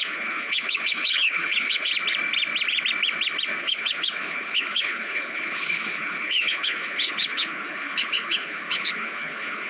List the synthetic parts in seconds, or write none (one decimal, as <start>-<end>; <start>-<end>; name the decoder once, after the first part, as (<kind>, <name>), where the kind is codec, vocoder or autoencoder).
0.0-1.9 (codec, HILCodec); 3.6-9.7

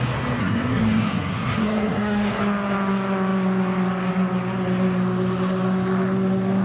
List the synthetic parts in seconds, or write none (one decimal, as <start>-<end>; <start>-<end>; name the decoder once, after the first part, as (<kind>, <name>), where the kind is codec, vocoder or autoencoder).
0.4-2.4 (codec, SNAC)

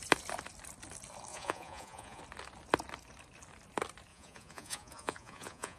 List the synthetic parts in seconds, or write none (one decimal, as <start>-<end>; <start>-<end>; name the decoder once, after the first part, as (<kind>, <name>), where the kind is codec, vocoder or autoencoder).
1.3-2.2 (vocoder, Vocos); 4.1-5.8

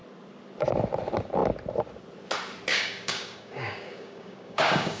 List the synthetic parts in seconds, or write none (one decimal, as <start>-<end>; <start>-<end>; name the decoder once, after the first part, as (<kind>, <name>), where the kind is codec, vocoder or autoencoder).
2.7-5.0 (codec, DAC)

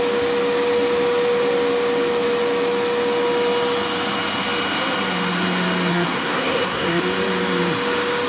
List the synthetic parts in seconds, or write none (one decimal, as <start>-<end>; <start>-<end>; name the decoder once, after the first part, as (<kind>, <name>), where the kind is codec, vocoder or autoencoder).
5.9-7.0 (codec, SNAC)

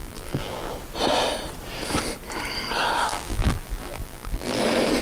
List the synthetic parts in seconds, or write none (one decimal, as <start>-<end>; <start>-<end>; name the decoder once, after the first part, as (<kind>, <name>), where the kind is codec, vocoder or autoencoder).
0.0-0.7 (vocoder, BigVGAN v2); 3.1-4.6